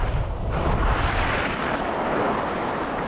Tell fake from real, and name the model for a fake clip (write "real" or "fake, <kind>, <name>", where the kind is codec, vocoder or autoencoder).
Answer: fake, vocoder, BigVGAN v2